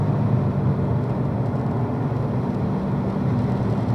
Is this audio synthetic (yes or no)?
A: no